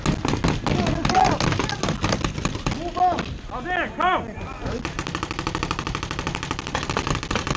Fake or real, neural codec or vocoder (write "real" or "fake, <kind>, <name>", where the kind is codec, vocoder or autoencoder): real